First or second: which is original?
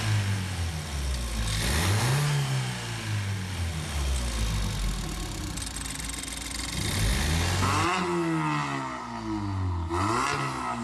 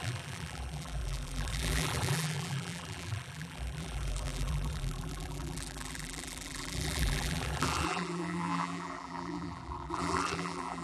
first